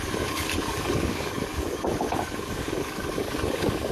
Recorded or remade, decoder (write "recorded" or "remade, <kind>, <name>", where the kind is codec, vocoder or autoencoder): remade, codec, DAC